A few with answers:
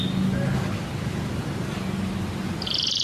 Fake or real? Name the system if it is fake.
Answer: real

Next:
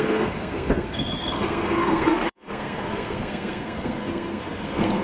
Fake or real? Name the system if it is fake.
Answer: fake, codec, SNAC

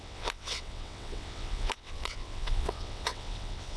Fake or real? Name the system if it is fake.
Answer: fake, vocoder, WaveNeXt